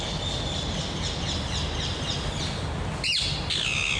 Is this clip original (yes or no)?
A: yes